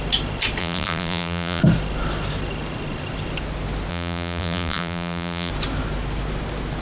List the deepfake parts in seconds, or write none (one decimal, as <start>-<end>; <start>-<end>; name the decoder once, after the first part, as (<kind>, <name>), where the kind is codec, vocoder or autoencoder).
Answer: 0.6-1.6 (vocoder, BigVGAN v2); 3.9-5.5